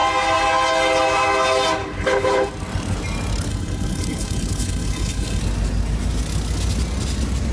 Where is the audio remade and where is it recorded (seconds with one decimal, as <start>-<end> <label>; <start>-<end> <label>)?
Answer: 0.0-1.8 recorded; 1.8-2.5 remade; 2.5-3.5 recorded; 3.5-5.4 remade; 5.4-7.5 recorded